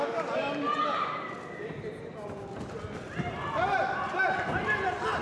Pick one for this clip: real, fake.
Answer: real